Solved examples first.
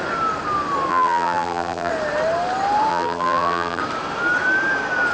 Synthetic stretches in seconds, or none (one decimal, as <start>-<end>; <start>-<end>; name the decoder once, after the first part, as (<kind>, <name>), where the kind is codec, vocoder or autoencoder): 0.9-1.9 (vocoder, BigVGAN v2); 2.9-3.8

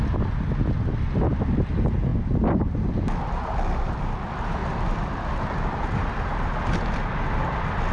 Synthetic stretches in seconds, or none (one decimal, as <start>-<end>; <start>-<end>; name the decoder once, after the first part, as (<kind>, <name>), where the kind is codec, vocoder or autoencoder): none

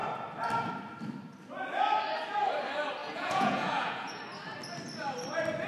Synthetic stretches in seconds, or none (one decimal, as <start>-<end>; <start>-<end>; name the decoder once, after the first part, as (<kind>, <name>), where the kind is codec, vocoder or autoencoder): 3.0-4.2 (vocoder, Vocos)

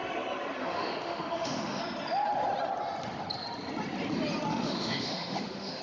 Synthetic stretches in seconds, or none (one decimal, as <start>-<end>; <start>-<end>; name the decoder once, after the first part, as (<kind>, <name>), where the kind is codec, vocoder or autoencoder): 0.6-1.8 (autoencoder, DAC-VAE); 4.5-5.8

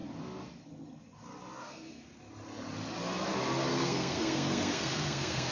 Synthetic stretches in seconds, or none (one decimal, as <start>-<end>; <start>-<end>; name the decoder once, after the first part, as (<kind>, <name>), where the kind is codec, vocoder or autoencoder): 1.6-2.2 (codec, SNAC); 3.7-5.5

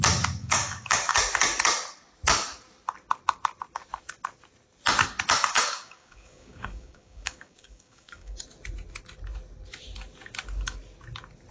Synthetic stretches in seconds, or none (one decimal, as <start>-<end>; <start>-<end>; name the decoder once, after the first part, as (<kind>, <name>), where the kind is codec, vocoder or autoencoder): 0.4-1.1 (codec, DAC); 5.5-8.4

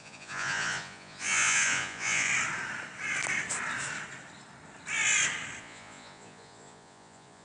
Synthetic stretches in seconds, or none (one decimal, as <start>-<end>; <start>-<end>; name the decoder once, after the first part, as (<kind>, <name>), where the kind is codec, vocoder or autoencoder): 0.0-2.3 (vocoder, Vocos); 5.6-7.4

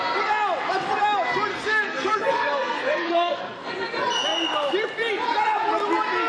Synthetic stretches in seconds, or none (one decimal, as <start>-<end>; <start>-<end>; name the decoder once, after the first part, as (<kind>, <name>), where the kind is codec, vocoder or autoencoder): 1.5-3.7 (codec, SNAC)